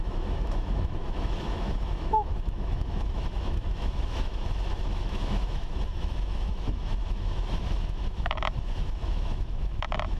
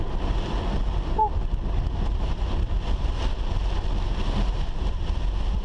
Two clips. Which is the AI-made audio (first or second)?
first